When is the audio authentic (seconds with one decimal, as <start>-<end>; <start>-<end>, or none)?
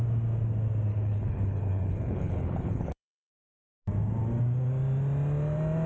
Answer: 0.0-0.9; 3.3-5.9